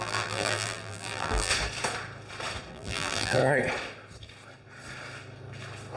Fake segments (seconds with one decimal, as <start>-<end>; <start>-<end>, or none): 0.0-1.5; 2.7-3.4